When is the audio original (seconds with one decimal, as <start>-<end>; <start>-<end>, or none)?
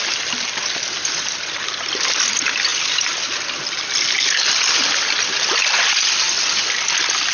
0.0-7.3